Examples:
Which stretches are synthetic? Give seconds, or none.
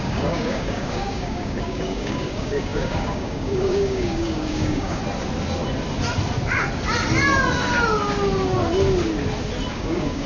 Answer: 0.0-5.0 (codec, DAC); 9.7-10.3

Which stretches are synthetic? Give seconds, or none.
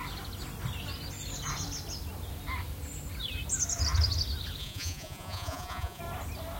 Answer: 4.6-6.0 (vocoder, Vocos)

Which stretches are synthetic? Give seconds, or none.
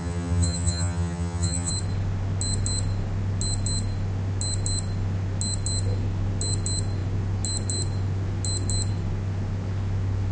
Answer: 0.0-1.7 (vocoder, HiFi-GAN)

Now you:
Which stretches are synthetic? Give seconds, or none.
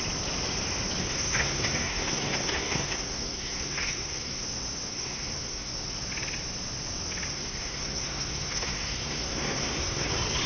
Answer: 1.0-4.4 (codec, SNAC); 4.9-5.7; 7.3-10.1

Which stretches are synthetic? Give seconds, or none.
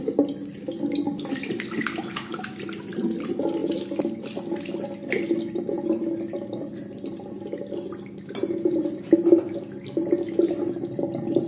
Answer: none